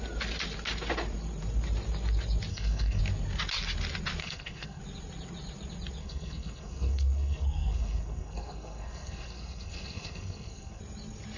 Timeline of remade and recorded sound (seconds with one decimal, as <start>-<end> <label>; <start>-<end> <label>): 0.0-2.5 recorded; 2.5-3.0 remade; 3.0-4.2 recorded; 4.2-4.8 remade; 4.8-6.0 recorded; 6.0-10.8 remade; 10.8-11.4 recorded